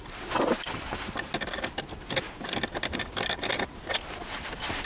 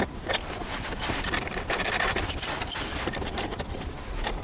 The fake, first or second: second